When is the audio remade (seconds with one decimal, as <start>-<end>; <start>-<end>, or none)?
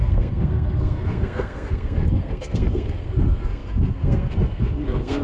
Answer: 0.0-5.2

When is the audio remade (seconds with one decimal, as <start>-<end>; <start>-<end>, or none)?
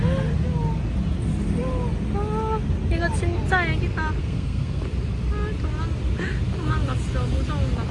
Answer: 4.2-4.8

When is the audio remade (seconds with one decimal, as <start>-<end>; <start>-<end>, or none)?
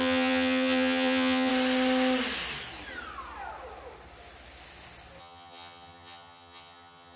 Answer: 0.0-1.5; 5.2-7.2